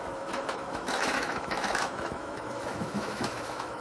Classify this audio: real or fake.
fake